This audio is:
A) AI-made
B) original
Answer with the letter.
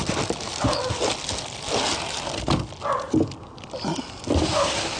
B